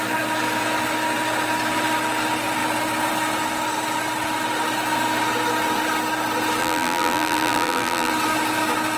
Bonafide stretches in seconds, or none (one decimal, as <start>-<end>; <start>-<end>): 0.0-6.6; 8.1-9.0